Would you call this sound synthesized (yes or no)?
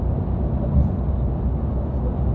no